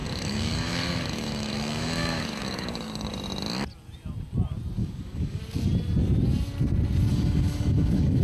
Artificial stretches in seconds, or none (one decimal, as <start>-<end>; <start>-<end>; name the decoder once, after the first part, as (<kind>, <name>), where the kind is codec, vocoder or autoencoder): 0.0-3.1 (codec, DAC); 4.8-5.4; 7.1-8.2

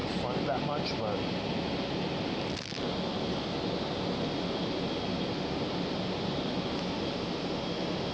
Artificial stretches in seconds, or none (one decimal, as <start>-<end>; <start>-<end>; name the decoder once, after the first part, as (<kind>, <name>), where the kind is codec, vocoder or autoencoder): none

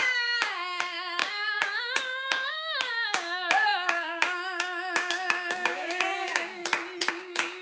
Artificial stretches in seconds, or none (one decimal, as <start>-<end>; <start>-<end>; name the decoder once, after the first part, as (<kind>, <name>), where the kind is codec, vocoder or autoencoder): 0.0-6.6 (codec, DAC); 7.1-7.6

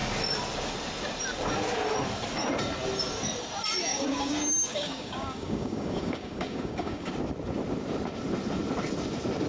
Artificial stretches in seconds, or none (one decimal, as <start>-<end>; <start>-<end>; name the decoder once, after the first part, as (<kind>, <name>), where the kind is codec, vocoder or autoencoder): 3.9-7.1 (codec, DAC)

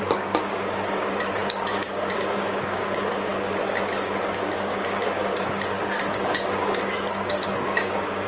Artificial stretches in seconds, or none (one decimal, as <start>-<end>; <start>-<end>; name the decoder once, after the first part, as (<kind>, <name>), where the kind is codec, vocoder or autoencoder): 0.0-8.3 (codec, DAC)

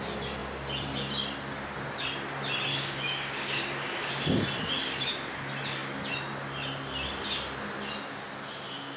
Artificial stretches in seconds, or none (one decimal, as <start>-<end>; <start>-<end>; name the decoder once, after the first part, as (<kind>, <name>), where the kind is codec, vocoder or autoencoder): 2.7-4.1 (codec, DAC)